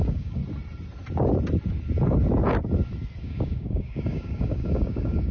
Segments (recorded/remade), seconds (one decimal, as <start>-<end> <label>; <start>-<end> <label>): 0.0-0.4 remade; 0.4-3.2 recorded; 3.2-5.3 remade

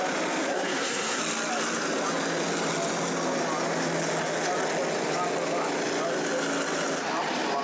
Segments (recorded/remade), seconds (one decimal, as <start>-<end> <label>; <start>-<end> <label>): 0.0-0.5 recorded; 0.5-1.2 remade; 1.2-7.6 recorded

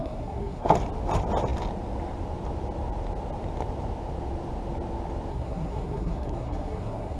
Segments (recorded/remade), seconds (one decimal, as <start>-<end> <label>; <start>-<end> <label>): 0.0-0.7 remade; 0.7-5.3 recorded; 5.3-7.2 remade

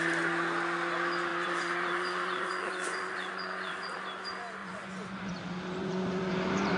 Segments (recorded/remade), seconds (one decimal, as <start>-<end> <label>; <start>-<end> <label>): 0.0-1.3 recorded; 1.3-4.0 remade; 4.0-4.6 recorded; 4.6-5.3 remade; 5.3-5.8 recorded; 5.8-6.3 remade; 6.3-6.8 recorded